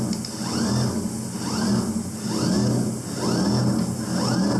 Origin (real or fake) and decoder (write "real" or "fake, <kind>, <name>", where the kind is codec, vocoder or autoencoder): real